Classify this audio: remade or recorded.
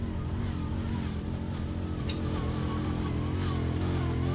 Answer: recorded